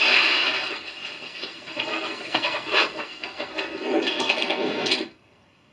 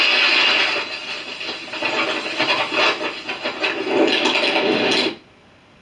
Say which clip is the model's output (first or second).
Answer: first